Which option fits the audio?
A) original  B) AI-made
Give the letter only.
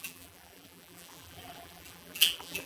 B